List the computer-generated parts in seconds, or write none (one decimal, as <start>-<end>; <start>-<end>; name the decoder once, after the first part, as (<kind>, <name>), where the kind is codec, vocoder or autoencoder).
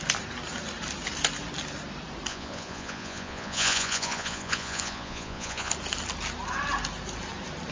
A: 2.3-5.7 (vocoder, Vocos)